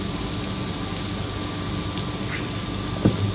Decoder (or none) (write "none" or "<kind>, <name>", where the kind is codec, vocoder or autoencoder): none